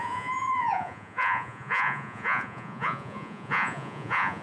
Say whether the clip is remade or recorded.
remade